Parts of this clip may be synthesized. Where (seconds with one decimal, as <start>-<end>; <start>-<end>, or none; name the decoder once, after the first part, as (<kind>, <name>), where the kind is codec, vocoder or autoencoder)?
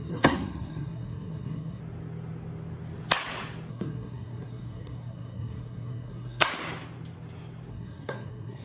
0.0-1.8 (codec, SNAC); 3.7-6.5; 7.7-8.6